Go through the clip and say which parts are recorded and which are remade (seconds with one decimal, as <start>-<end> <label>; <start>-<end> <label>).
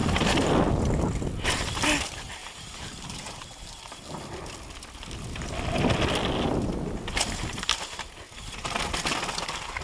0.0-2.4 recorded; 2.4-4.0 remade; 4.0-9.8 recorded